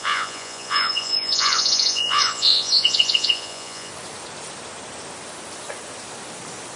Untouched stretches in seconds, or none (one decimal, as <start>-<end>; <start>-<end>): 3.9-6.8